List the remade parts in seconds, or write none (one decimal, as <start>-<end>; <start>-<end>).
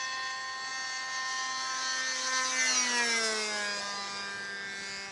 none